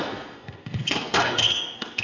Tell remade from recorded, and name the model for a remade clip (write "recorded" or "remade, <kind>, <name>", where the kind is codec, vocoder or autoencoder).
remade, codec, SNAC